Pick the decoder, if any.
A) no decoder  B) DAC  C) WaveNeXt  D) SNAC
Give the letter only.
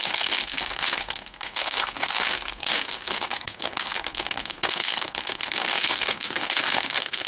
D